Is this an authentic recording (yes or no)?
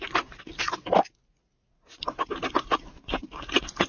yes